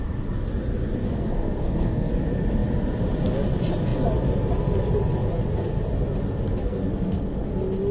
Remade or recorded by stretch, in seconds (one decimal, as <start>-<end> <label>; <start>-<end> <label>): 0.0-1.0 recorded; 1.0-2.1 remade; 2.1-6.6 recorded; 6.6-7.5 remade; 7.5-7.9 recorded